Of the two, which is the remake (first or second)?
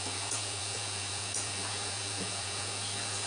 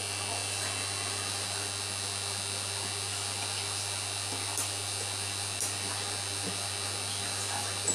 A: first